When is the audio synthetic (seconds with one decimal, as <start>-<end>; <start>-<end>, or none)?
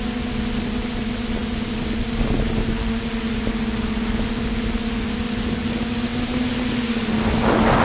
none